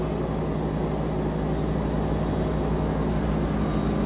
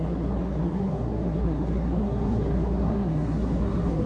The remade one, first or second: second